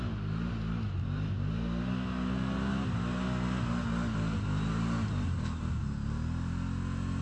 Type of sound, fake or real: real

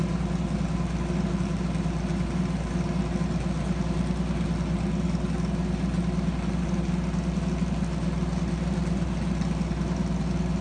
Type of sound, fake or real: real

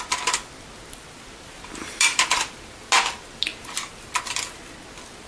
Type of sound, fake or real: real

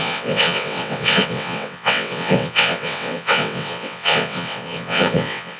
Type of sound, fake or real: fake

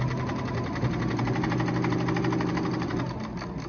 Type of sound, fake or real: real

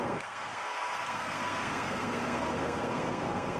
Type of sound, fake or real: fake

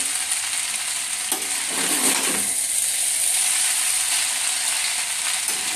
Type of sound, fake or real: real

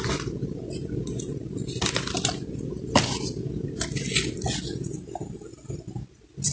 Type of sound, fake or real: real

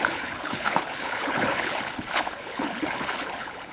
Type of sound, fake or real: fake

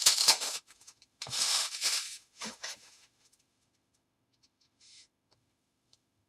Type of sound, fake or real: fake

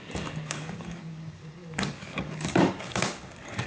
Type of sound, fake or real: fake